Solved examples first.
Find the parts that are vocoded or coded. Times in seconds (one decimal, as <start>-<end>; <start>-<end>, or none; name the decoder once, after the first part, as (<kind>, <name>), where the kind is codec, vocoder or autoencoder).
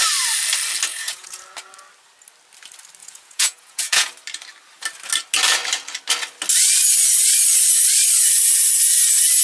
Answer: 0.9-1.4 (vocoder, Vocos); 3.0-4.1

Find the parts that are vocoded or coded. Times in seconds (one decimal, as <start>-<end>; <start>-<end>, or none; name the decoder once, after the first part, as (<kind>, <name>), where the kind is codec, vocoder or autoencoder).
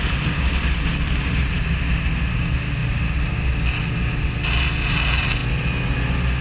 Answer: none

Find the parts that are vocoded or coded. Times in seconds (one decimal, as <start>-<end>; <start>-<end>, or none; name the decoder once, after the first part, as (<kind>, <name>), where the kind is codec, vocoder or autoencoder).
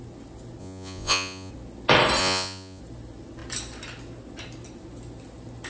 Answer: 0.6-1.5 (vocoder, Vocos); 2.2-2.8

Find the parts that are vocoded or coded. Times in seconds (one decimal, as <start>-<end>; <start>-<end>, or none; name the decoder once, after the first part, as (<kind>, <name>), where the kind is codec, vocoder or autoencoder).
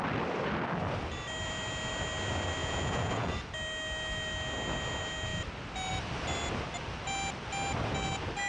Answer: 2.6-3.3 (vocoder, Vocos)